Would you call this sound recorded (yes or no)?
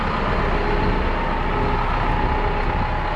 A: yes